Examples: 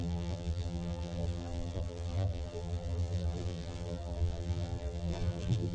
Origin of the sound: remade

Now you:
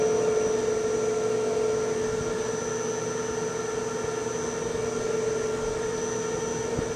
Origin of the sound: recorded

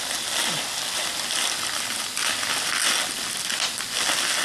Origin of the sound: recorded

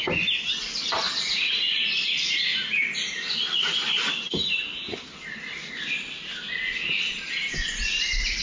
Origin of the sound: recorded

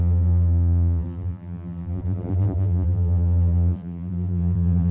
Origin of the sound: remade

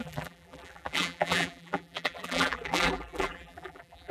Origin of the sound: remade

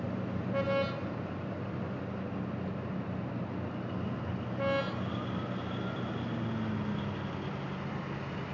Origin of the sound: recorded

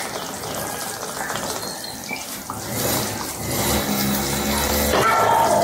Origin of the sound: recorded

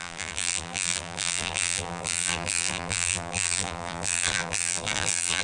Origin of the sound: remade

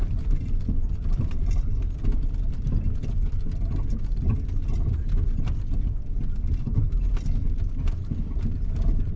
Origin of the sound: recorded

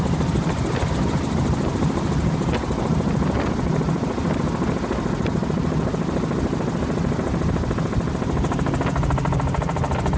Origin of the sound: recorded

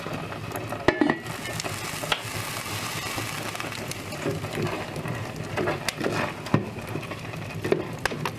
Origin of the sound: recorded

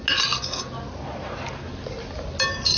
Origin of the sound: recorded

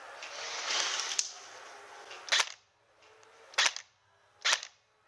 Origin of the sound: recorded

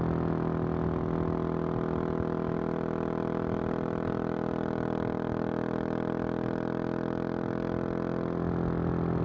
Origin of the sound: recorded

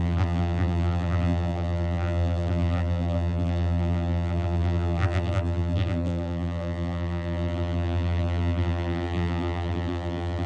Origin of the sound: remade